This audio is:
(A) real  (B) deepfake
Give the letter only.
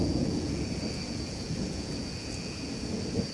B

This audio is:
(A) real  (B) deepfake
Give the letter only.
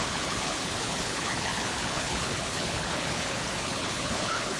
B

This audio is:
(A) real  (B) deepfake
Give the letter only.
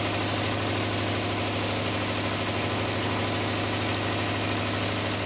A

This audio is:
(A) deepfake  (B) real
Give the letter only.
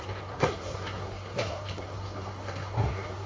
A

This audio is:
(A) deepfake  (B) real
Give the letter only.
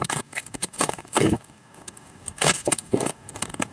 A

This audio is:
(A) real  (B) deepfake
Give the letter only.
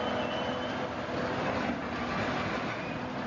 A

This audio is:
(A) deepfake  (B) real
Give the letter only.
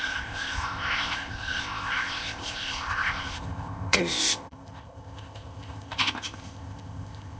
A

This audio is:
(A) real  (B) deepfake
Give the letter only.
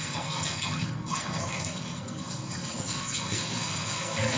B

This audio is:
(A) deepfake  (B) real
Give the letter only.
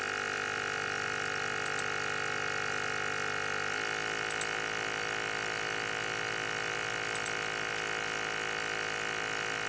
B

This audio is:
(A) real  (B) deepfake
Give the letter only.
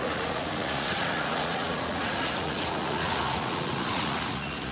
B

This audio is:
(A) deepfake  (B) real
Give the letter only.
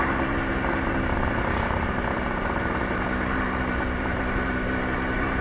A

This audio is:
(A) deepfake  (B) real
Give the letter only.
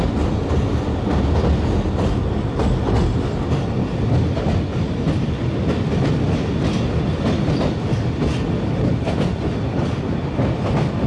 B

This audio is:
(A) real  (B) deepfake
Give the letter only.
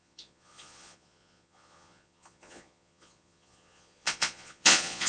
B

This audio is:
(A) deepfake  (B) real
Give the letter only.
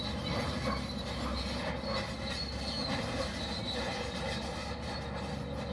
B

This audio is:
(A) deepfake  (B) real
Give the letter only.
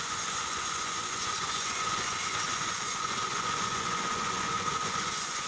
A